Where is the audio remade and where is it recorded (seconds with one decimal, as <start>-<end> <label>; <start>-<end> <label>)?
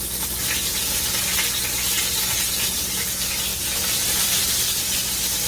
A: 0.0-0.7 recorded; 0.7-2.7 remade; 2.7-3.5 recorded; 3.5-4.8 remade; 4.8-5.5 recorded